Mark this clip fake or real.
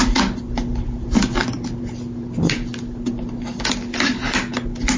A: real